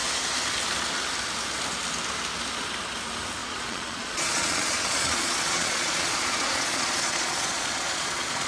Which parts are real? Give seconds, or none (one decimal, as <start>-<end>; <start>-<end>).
0.0-3.4